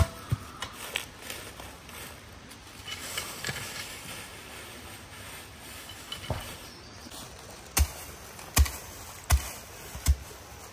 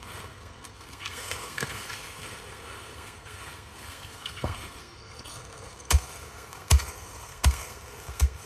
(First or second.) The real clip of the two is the first